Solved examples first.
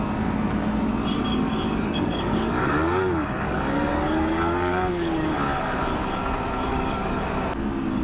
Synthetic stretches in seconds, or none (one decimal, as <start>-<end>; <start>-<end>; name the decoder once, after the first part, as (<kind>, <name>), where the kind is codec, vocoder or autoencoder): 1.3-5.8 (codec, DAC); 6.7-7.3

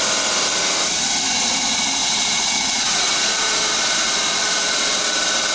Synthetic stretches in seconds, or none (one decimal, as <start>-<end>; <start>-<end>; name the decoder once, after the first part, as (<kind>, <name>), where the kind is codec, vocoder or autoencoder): 2.0-3.6 (vocoder, Vocos)

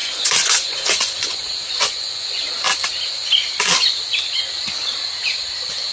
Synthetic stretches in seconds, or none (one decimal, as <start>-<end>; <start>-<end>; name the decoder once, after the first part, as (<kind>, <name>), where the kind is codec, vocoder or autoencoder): 0.0-2.5 (vocoder, Vocos)

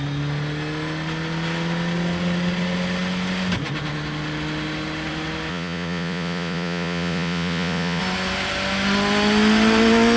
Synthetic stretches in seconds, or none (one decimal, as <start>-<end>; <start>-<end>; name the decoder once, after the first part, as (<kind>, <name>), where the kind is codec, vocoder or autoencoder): 5.5-8.0 (vocoder, Vocos)